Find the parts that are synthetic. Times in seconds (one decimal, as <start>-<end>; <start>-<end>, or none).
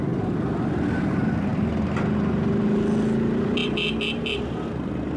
none